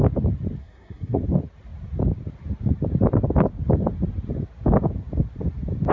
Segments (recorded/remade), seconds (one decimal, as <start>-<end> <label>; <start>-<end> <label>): 0.0-0.6 recorded; 0.6-1.2 remade; 1.2-5.9 recorded